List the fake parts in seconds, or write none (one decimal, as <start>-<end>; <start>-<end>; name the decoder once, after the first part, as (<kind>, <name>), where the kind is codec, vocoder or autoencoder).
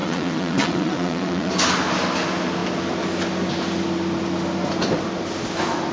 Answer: 0.0-1.5 (vocoder, WaveNeXt)